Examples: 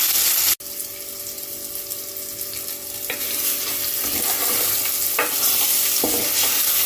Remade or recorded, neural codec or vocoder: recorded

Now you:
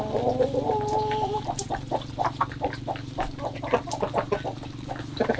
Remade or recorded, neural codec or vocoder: recorded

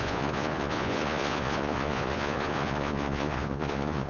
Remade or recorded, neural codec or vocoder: remade, vocoder, Vocos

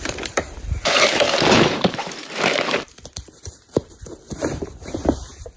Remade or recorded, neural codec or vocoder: remade, vocoder, BigVGAN v2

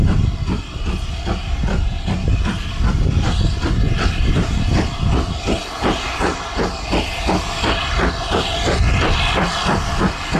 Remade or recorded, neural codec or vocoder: recorded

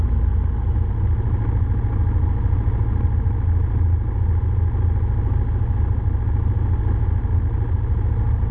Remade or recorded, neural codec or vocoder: recorded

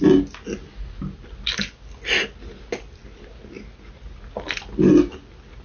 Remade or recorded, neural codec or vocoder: recorded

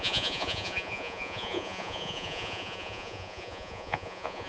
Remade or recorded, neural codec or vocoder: remade, vocoder, Vocos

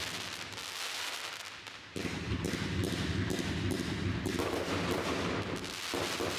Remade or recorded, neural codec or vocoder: recorded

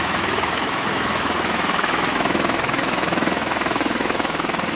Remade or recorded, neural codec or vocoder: remade, autoencoder, DAC-VAE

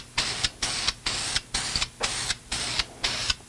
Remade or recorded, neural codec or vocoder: recorded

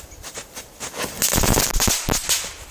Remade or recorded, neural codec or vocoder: recorded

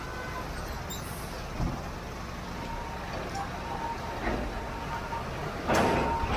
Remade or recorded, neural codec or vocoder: recorded